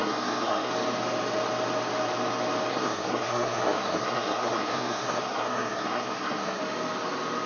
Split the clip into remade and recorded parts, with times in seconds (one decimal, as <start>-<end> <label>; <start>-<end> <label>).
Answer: 0.0-0.7 remade; 0.7-2.7 recorded; 2.7-6.6 remade; 6.6-7.5 recorded